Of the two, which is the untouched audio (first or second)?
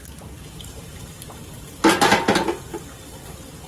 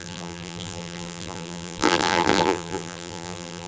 first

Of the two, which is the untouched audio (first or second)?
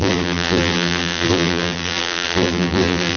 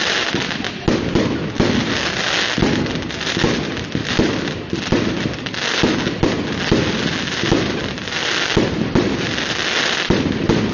second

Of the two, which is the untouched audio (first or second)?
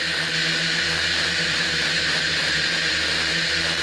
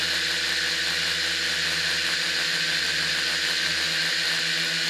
second